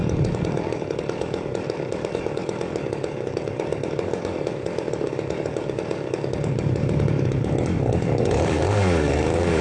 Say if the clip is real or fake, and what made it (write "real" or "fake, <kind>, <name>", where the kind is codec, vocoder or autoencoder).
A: fake, codec, DAC